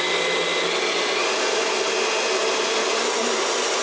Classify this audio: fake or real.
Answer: real